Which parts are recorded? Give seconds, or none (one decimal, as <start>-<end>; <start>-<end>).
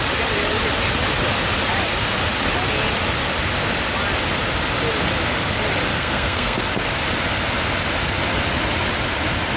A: 0.0-5.9; 6.6-9.6